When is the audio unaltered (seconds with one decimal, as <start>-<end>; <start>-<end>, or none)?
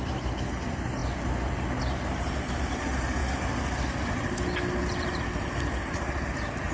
0.0-6.7